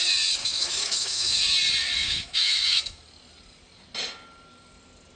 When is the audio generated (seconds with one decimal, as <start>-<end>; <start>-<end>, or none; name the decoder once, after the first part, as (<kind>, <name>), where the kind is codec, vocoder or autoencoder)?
0.4-1.4 (autoencoder, DAC-VAE); 2.0-3.0